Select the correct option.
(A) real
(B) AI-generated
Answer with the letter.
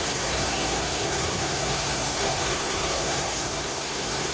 B